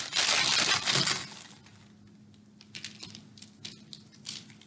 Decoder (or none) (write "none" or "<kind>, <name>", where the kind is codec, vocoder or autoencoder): none